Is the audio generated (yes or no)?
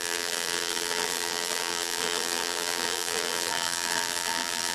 yes